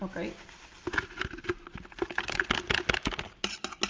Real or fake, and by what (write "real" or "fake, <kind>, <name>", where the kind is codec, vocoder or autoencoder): real